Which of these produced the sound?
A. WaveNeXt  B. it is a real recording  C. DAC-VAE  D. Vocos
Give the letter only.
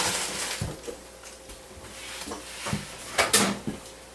B